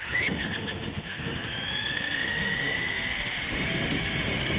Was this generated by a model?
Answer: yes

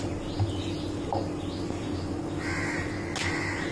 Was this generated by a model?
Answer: no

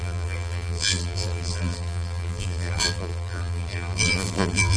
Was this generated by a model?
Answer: yes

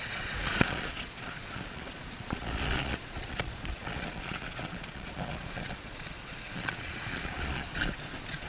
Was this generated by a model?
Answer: yes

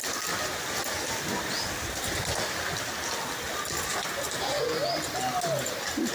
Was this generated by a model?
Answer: no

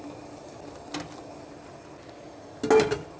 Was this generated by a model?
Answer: no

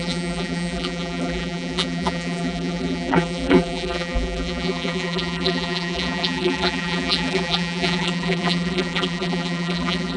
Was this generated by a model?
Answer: yes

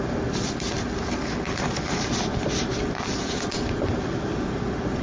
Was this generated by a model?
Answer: no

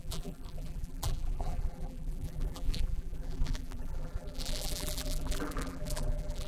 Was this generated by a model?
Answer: yes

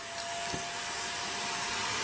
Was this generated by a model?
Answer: no